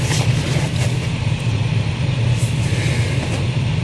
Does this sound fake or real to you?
real